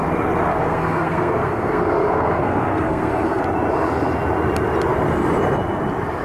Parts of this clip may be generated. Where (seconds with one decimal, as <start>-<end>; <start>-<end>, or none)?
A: 0.5-3.4